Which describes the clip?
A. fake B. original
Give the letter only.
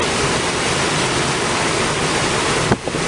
B